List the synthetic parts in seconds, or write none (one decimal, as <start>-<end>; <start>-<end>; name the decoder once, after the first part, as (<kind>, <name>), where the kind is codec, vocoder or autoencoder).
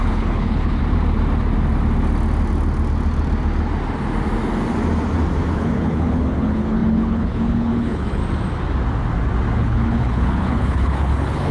0.0-0.8 (codec, HILCodec); 5.5-8.2; 9.6-11.5